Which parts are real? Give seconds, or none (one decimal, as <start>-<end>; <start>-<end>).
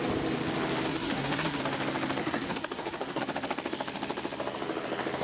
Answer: 0.0-0.9; 1.6-2.2; 3.2-5.2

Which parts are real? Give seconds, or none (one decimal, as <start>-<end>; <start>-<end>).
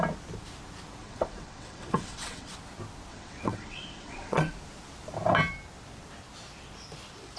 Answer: 0.0-1.0; 2.5-3.1; 4.5-7.4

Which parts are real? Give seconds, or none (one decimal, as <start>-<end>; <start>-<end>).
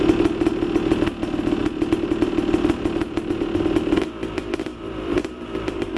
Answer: 0.0-1.6; 3.3-4.7